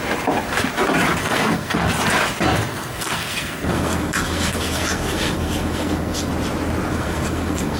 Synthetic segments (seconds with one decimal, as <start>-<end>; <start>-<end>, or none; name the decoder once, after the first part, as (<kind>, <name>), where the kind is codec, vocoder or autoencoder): 1.2-1.9 (codec, SNAC); 2.7-6.3; 6.9-7.8